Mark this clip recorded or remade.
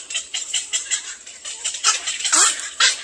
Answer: remade